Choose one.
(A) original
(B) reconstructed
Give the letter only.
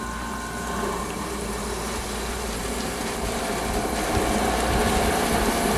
B